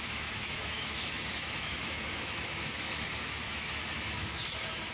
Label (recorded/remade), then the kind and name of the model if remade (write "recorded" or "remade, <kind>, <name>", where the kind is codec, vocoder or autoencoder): remade, autoencoder, DAC-VAE